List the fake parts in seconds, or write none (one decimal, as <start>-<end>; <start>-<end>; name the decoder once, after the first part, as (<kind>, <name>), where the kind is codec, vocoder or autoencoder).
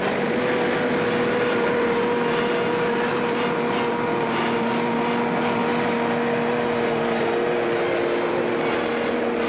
none